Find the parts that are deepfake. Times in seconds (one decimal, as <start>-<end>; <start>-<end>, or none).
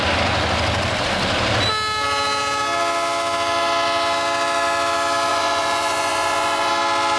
5.3-6.7